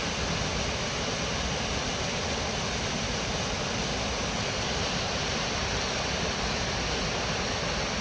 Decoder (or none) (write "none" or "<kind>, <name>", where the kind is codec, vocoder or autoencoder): none